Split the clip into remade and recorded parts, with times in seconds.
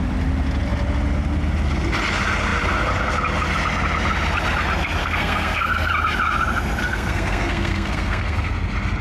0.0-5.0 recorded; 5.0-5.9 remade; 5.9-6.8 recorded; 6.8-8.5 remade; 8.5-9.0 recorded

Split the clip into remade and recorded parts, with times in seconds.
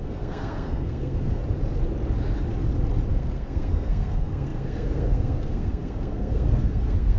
0.0-1.4 remade; 1.4-3.1 recorded; 3.1-7.2 remade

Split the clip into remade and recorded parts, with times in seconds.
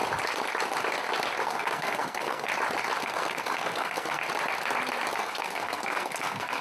0.0-1.4 recorded; 1.4-2.5 remade; 2.5-3.0 recorded; 3.0-4.2 remade; 4.2-5.1 recorded; 5.1-6.6 remade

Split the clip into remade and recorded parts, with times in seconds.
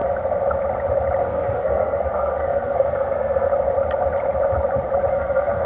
0.0-1.2 recorded; 1.2-3.5 remade; 3.5-5.1 recorded; 5.1-5.7 remade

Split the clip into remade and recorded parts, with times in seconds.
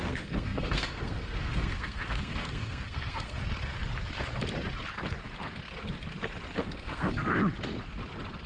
0.0-3.4 remade; 3.4-6.6 recorded; 6.6-7.4 remade; 7.4-8.5 recorded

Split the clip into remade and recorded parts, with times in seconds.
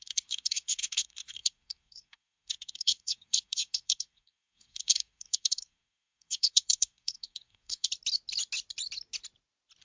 0.0-7.9 remade; 7.9-9.8 recorded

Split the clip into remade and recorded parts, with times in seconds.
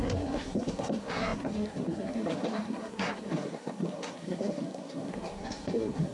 0.0-6.1 remade